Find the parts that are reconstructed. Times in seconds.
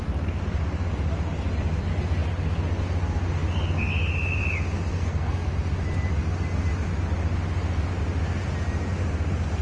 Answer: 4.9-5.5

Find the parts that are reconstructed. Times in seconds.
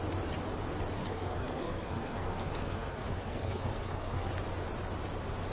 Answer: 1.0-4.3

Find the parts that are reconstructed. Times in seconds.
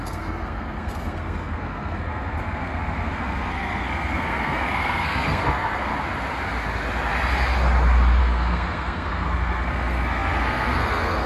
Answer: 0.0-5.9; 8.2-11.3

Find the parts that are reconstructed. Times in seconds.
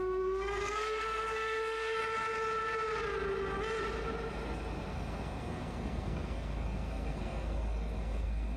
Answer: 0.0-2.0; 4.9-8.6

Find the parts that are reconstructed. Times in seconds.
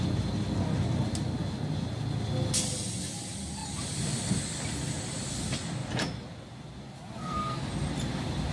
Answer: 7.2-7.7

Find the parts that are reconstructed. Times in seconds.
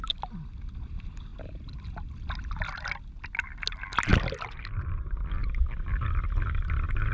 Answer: none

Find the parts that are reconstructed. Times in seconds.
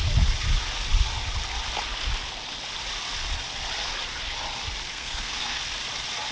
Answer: 4.9-5.6